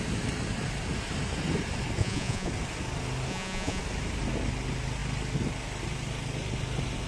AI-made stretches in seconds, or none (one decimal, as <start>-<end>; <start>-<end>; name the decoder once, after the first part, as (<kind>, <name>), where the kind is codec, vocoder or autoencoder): 2.0-2.5 (vocoder, Vocos); 3.3-3.8